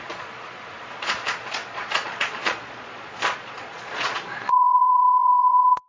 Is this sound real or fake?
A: fake